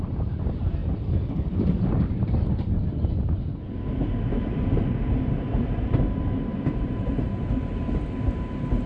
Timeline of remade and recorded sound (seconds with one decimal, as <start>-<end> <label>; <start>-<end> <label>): 0.0-6.5 recorded; 6.5-7.2 remade; 7.2-8.9 recorded